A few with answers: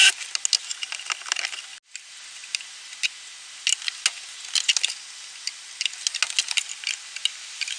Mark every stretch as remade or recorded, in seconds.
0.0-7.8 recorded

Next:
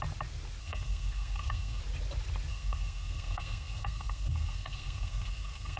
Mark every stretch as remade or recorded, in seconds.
0.0-0.6 recorded; 0.6-1.8 remade; 1.8-2.5 recorded; 2.5-5.8 remade

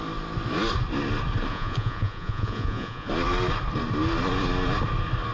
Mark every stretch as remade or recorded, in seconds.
0.0-1.5 recorded; 1.5-3.1 remade; 3.1-5.3 recorded

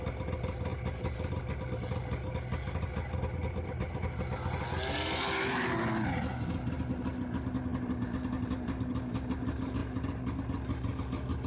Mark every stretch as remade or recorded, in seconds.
0.0-11.5 recorded

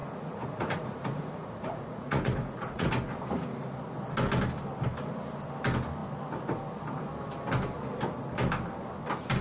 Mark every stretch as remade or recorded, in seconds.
0.0-2.9 remade; 2.9-9.4 recorded

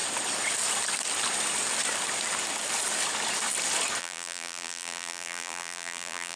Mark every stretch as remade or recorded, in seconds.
0.0-4.0 recorded; 4.0-6.4 remade